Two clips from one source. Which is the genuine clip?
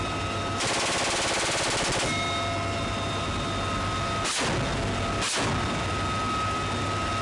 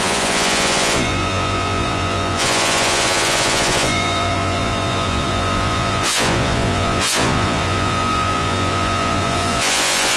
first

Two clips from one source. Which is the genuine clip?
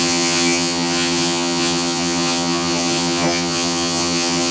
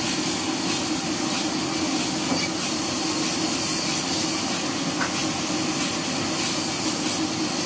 second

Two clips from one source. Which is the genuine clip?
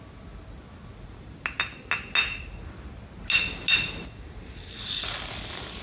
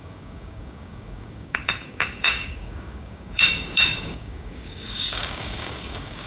first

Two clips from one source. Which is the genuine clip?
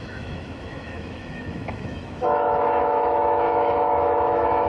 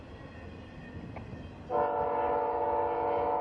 second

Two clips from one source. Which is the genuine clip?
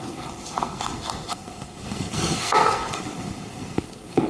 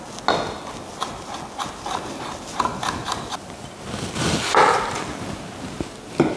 second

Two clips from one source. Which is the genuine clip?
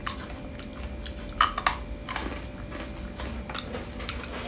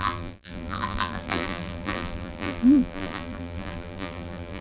first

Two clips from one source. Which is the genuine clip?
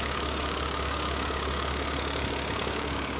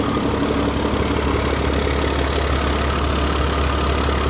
second